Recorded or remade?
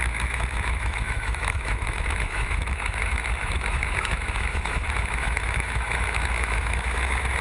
remade